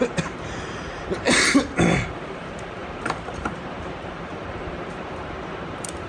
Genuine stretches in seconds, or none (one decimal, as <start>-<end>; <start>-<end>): none